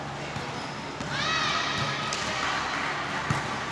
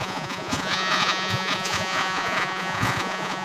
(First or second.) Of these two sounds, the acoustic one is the first